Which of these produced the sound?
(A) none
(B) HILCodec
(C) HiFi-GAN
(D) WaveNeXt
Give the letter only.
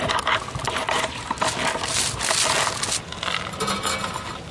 A